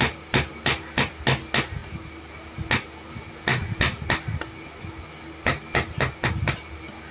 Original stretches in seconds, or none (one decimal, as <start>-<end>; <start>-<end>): 0.0-7.1

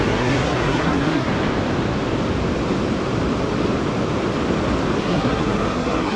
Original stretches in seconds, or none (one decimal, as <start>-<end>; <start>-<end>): 1.3-5.0